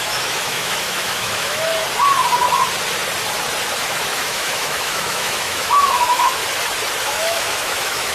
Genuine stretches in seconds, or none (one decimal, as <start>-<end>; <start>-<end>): 1.7-3.9; 6.4-7.0